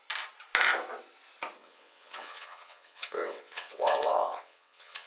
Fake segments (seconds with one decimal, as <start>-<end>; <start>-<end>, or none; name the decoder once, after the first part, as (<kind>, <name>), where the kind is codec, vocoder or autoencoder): 1.6-5.1 (vocoder, WaveNeXt)

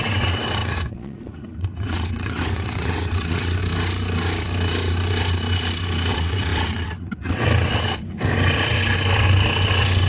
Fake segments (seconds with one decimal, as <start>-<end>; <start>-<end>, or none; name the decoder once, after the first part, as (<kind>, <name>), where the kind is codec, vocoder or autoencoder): 0.0-3.6 (vocoder, WaveNeXt); 6.1-8.0

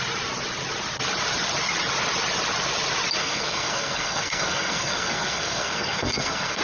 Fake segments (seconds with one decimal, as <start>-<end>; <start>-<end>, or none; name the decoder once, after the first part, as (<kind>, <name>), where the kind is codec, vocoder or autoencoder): 3.2-6.6 (codec, SNAC)

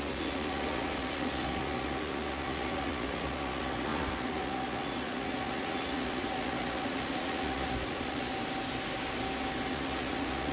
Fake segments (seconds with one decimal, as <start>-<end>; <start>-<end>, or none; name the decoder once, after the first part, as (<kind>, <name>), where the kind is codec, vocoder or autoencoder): 0.0-8.3 (vocoder, Vocos); 9.7-10.5

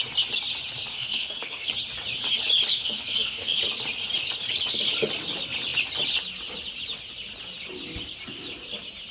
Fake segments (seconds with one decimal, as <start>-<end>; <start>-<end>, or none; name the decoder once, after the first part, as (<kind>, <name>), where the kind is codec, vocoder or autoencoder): 0.9-1.7 (codec, SNAC); 2.7-3.6